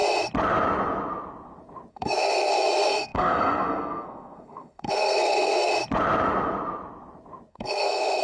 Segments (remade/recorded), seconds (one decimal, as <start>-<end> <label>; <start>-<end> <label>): 0.0-1.9 recorded; 1.9-5.7 remade; 5.7-7.5 recorded; 7.5-8.2 remade